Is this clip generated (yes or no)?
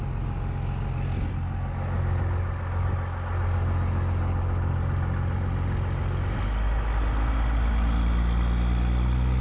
no